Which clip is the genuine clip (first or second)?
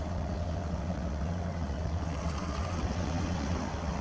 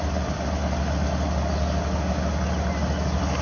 second